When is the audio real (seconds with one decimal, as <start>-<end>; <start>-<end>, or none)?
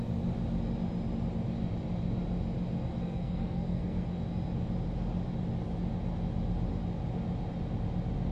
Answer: 0.0-2.9; 4.2-8.3